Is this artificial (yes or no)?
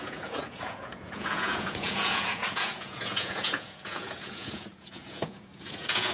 yes